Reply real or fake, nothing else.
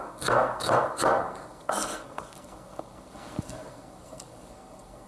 fake